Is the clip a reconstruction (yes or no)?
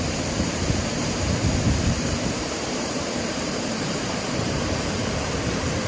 yes